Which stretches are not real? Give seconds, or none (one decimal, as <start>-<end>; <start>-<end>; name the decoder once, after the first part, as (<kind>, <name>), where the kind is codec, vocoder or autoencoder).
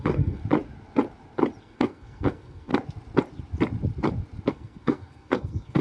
0.0-0.4 (codec, SNAC); 1.6-2.7; 4.5-5.8